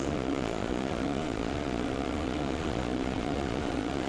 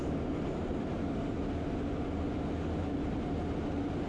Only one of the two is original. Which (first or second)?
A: second